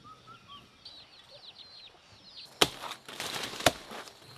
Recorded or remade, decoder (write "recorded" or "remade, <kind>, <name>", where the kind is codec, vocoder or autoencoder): recorded